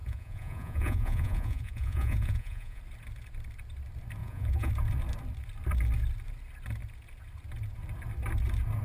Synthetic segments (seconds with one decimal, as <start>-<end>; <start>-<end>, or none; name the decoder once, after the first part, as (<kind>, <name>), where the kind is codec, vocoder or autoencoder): 0.0-2.8 (vocoder, Vocos); 4.2-4.7